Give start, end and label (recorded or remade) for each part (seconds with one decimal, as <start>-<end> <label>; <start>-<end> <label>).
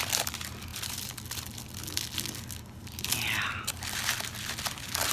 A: 0.0-5.1 recorded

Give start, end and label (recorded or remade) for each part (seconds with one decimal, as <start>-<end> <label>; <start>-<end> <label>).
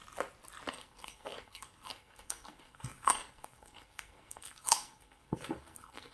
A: 0.0-0.7 recorded; 0.7-6.1 remade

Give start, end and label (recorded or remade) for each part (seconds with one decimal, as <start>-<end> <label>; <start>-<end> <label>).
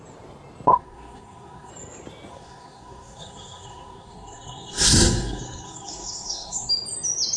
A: 0.0-0.7 recorded; 0.7-1.7 remade; 1.7-2.3 recorded; 2.3-6.7 remade; 6.7-7.4 recorded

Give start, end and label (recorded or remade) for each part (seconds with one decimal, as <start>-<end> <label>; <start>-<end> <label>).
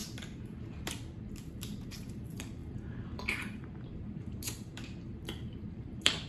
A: 0.0-1.5 recorded; 1.5-6.3 remade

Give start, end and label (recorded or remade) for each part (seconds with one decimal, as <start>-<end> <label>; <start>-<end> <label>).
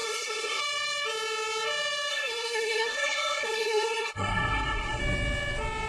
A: 0.0-0.6 remade; 0.6-2.1 recorded; 2.1-5.0 remade; 5.0-5.9 recorded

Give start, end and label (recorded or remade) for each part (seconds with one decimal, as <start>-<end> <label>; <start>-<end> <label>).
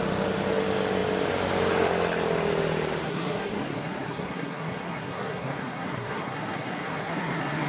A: 0.0-3.0 recorded; 3.0-7.7 remade